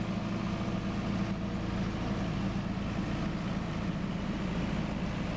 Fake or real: real